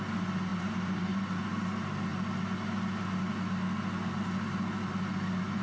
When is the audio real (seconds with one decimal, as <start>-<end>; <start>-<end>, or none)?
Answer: 0.0-0.5; 1.2-5.6